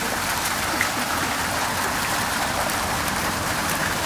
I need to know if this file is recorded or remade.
remade